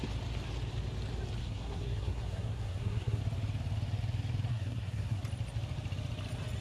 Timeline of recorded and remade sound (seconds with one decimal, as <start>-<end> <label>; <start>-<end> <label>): 0.0-1.4 recorded; 1.4-3.2 remade; 3.2-4.5 recorded; 4.5-5.2 remade; 5.2-6.6 recorded